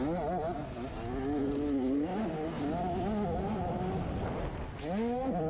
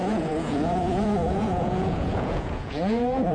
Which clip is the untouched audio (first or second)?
first